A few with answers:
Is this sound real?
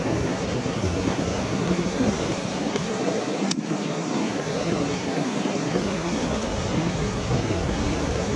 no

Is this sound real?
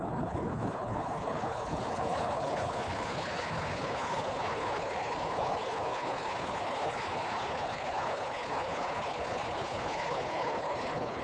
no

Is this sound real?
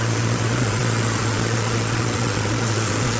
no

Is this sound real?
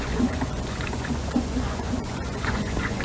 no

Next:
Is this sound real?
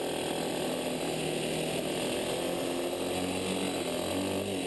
yes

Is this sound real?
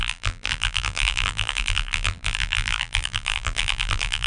no